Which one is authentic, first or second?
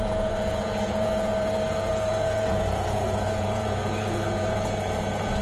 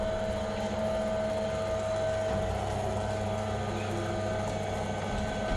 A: second